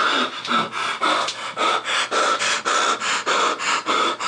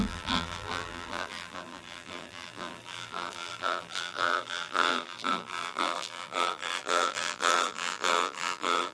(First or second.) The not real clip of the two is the second